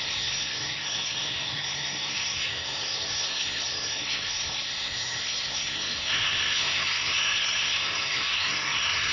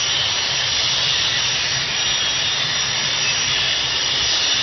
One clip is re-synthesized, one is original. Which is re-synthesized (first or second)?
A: first